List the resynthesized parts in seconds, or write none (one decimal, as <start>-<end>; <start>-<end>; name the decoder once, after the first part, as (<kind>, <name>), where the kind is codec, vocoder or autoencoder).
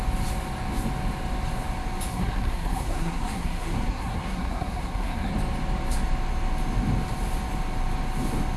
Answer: 2.1-5.3 (codec, SNAC)